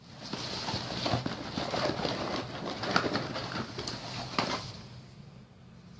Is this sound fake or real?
real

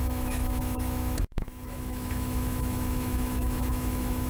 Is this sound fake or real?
fake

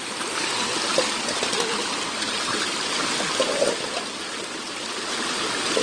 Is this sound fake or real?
real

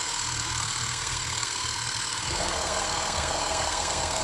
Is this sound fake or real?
fake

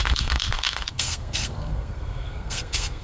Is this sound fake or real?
fake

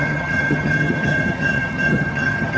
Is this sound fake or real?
fake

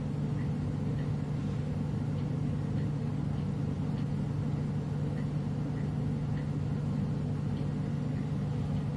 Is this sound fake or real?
real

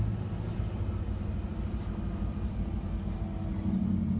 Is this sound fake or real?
real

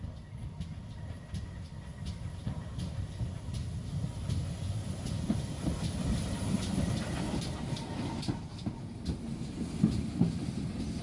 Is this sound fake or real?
real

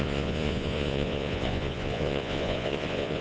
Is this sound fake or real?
fake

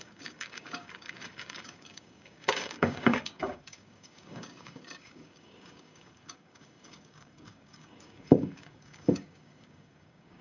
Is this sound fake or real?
fake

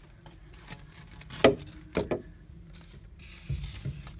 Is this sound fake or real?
real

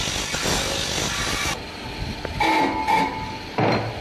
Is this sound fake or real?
real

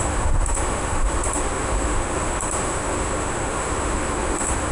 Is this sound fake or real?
fake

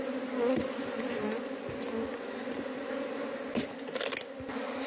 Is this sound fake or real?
real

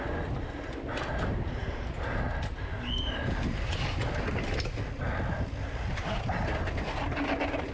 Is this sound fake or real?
real